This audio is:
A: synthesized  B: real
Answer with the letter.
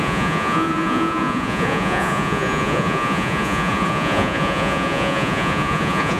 A